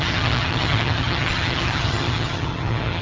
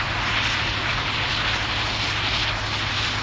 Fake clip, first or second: first